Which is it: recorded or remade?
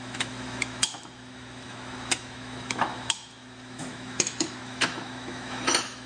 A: remade